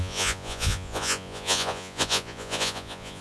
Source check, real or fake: fake